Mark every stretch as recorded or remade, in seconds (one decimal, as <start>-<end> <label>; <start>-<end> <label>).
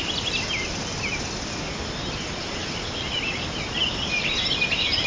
0.0-5.1 recorded